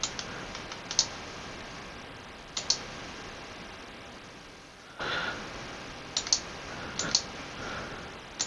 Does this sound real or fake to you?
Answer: real